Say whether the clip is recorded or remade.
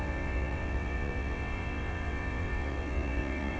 remade